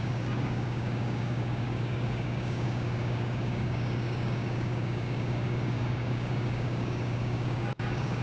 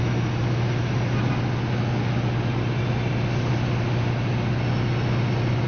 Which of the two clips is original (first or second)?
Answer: second